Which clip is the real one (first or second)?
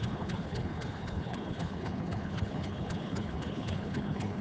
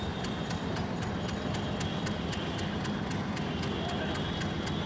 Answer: second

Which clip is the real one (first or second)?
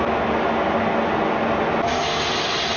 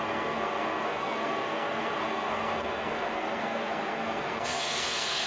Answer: first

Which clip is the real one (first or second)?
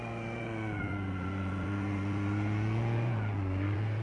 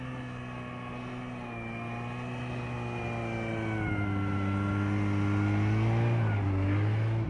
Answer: second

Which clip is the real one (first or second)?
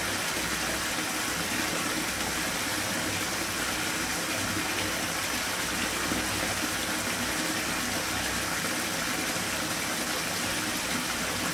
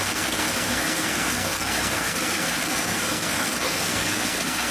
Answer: first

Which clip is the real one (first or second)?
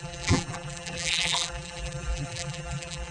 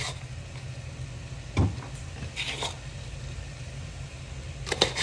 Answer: second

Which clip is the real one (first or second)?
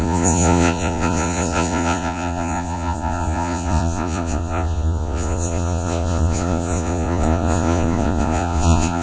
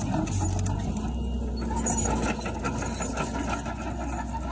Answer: second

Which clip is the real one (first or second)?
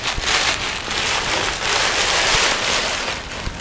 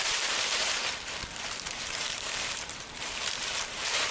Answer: first